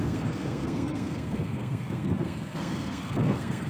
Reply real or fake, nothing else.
fake